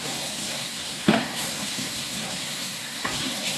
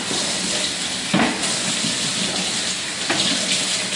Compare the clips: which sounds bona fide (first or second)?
second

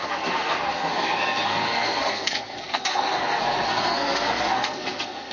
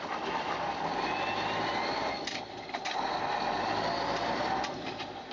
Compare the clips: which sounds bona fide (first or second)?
second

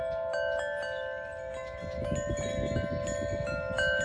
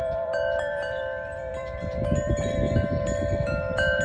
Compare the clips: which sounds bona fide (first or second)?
first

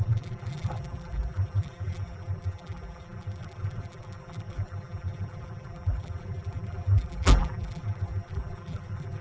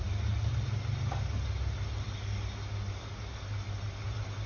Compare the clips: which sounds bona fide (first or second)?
second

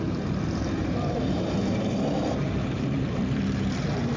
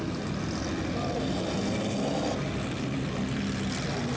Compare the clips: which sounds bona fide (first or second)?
second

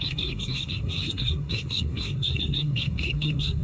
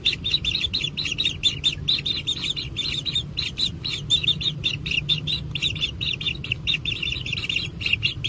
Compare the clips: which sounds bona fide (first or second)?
second